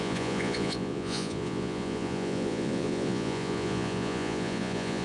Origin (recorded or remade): remade